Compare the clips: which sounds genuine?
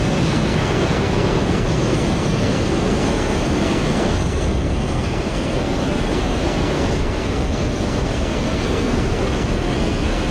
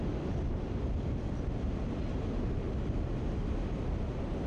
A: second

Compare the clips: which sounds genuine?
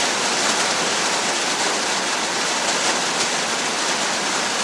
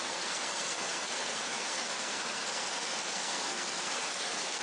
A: first